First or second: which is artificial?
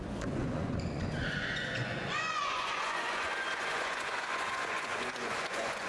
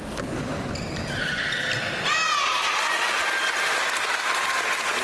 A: first